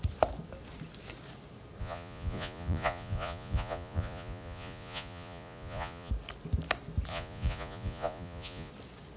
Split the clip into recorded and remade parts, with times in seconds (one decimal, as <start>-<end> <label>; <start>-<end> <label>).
0.0-1.8 recorded; 1.8-6.1 remade; 6.1-7.1 recorded; 7.1-8.7 remade; 8.7-9.2 recorded